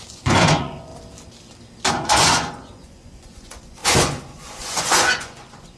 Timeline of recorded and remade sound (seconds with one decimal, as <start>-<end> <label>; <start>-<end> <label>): 0.0-0.9 remade; 0.9-1.9 recorded; 1.9-5.8 remade